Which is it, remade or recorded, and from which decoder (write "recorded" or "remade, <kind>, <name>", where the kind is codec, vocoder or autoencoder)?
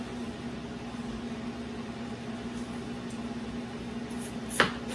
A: recorded